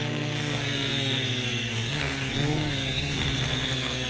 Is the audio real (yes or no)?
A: no